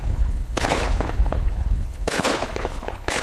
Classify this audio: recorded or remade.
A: remade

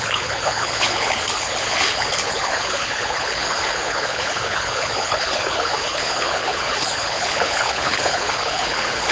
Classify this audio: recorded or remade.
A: remade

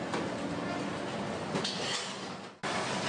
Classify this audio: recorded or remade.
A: recorded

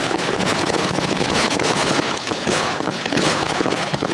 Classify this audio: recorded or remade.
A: remade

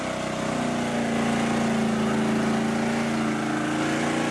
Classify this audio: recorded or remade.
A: recorded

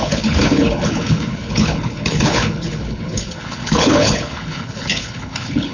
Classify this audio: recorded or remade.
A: remade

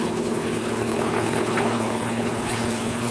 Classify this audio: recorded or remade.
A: remade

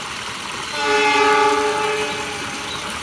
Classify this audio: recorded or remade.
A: recorded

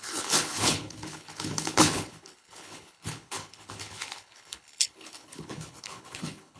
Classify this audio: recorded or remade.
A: remade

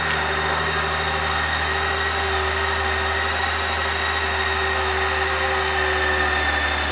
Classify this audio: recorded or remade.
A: recorded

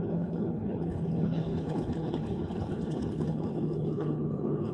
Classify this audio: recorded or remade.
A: remade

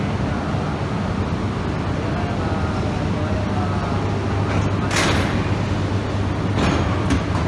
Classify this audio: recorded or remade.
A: recorded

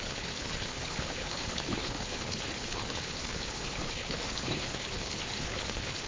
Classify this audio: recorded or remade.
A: remade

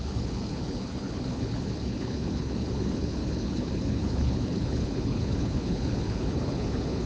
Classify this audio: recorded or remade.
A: remade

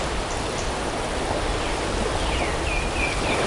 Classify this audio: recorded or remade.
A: recorded